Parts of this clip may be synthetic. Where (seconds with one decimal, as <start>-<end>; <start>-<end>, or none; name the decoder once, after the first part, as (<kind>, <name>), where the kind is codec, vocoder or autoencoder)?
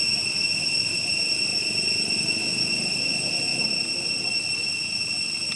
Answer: none